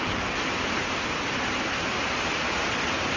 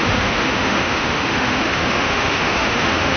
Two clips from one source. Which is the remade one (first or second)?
second